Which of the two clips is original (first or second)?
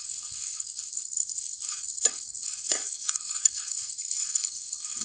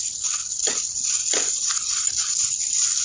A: second